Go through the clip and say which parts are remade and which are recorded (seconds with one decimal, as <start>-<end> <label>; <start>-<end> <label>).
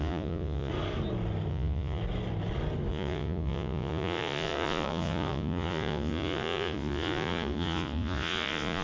0.0-0.7 remade; 0.7-1.5 recorded; 1.5-2.0 remade; 2.0-2.9 recorded; 2.9-8.8 remade